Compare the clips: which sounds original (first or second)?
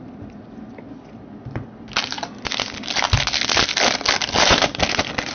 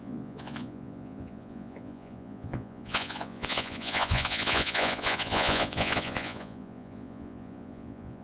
first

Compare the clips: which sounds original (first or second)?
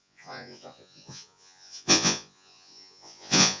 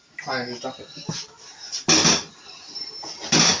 second